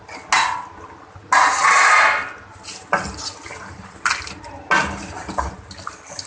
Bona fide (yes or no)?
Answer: yes